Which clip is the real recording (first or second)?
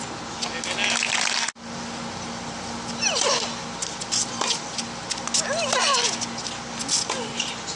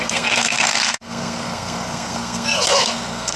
first